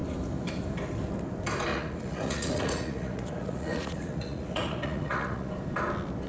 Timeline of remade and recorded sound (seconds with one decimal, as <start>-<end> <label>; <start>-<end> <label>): 0.0-1.7 recorded; 1.7-5.5 remade; 5.5-6.3 recorded

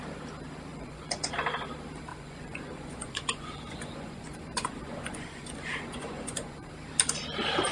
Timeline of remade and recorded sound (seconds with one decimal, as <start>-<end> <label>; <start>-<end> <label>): 0.0-0.7 recorded; 0.7-1.3 remade; 1.3-2.1 recorded; 2.1-6.7 remade; 6.7-7.7 recorded

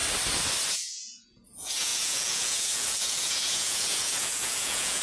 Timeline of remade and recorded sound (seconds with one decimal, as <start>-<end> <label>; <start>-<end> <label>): 0.0-0.7 recorded; 0.7-5.0 remade

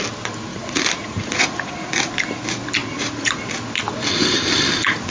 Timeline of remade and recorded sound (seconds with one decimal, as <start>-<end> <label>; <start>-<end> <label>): 0.0-0.5 recorded; 0.5-2.1 remade; 2.1-2.8 recorded; 2.8-3.4 remade; 3.4-5.1 recorded

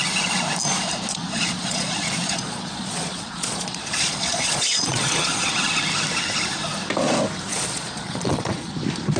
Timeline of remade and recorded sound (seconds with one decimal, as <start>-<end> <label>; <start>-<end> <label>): 0.0-1.1 recorded; 1.1-5.5 remade; 5.5-7.5 recorded; 7.5-8.7 remade; 8.7-9.2 recorded